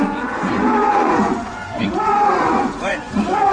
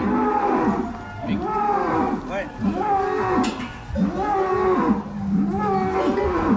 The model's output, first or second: first